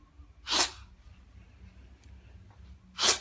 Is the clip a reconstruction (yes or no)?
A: no